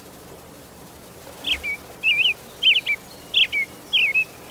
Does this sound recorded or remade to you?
recorded